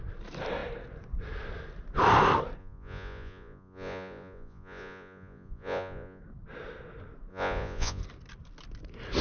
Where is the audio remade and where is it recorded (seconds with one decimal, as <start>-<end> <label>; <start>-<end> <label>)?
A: 0.0-2.6 recorded; 2.6-6.2 remade; 6.2-7.3 recorded; 7.3-8.0 remade; 8.0-9.2 recorded